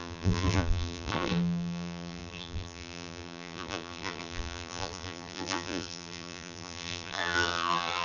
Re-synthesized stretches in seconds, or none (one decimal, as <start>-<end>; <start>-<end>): 0.0-8.0